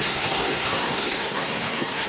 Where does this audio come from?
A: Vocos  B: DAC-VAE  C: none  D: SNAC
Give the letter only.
D